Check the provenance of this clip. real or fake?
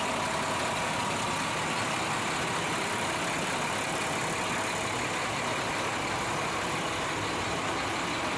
real